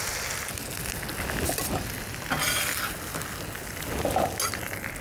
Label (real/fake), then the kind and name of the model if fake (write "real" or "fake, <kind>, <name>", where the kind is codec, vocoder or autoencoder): real